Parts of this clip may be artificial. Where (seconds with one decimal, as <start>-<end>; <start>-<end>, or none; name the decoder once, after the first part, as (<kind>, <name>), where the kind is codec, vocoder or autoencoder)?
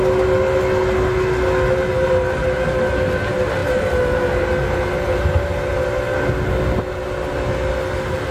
none